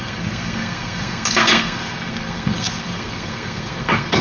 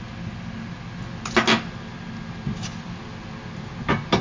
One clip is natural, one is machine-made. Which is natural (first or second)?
second